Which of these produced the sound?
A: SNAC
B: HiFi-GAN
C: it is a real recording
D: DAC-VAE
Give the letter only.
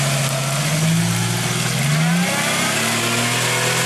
C